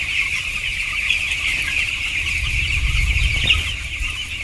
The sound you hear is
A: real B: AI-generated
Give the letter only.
A